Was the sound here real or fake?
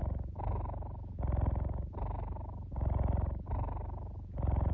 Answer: real